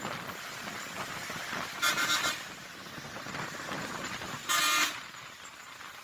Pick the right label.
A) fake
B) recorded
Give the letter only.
B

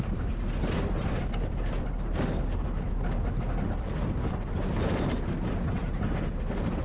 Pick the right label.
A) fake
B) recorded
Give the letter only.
B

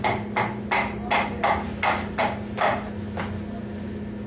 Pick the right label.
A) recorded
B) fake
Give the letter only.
A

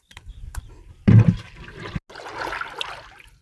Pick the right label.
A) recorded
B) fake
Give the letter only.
A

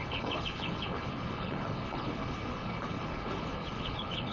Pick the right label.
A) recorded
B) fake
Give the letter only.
B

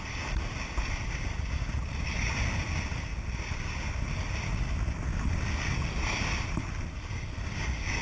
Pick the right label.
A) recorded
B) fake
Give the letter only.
A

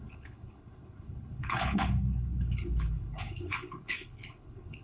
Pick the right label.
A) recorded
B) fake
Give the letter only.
B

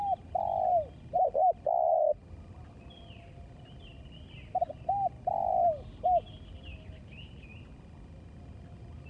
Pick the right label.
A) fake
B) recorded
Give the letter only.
B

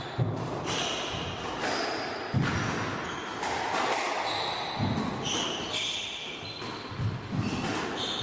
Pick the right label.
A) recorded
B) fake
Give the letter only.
A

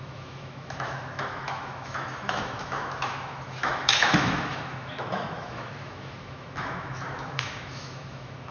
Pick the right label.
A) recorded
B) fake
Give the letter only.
B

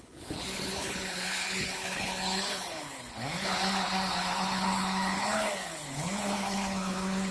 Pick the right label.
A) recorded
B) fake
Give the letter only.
B